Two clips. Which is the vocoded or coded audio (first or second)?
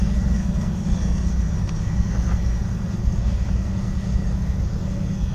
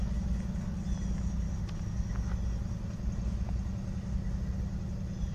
first